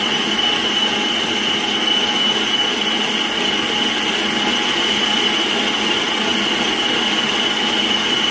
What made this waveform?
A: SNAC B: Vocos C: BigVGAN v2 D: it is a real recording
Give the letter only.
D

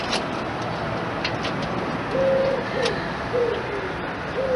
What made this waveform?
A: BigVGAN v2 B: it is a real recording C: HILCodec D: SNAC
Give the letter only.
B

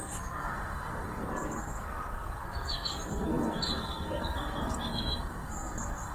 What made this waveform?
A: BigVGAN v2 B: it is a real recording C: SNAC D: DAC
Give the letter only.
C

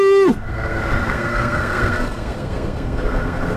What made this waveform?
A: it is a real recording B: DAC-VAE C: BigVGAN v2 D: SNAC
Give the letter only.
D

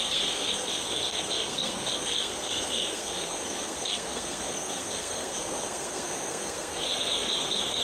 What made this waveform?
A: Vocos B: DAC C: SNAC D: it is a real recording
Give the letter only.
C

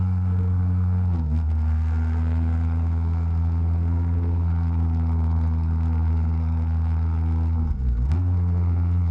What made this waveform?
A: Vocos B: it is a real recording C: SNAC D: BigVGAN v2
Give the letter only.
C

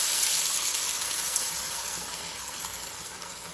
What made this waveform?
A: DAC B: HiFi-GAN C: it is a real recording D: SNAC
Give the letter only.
D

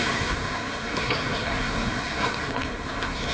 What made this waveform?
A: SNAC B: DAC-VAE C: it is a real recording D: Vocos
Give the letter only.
A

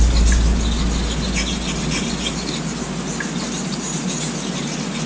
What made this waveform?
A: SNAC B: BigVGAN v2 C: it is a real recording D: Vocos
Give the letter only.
C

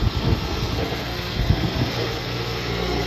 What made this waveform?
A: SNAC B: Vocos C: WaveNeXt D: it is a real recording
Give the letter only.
A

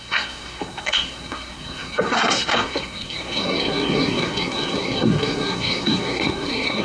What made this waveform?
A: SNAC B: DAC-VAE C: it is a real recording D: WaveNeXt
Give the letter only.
A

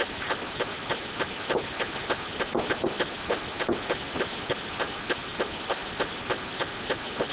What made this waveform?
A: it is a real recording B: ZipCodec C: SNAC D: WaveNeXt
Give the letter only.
A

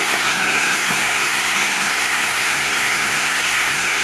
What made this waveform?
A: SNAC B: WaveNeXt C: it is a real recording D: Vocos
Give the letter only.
A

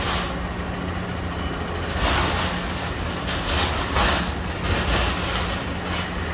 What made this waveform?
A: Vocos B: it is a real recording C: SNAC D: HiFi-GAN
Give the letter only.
B